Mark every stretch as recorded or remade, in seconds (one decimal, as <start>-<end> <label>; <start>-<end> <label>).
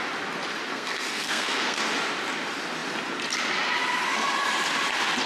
0.0-0.7 recorded; 0.7-1.8 remade; 1.8-5.3 recorded